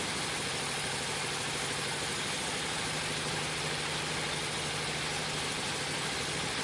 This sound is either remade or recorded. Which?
recorded